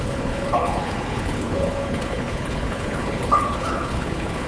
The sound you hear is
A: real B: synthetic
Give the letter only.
B